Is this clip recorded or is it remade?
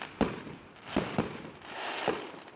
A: recorded